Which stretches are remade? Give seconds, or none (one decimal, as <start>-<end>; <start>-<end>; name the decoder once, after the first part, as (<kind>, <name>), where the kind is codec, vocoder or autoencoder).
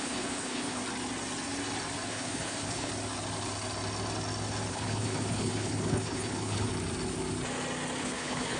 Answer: 0.0-0.8 (codec, HILCodec); 2.1-2.9; 4.7-6.7; 8.0-8.6